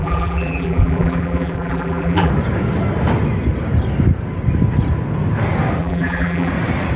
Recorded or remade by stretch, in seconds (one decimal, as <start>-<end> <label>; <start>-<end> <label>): 0.0-2.3 remade; 2.3-5.8 recorded; 5.8-6.5 remade; 6.5-7.0 recorded